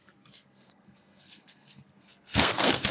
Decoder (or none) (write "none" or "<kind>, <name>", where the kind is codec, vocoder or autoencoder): codec, SNAC